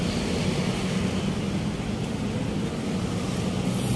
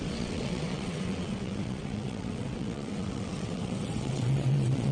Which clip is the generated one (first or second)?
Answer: second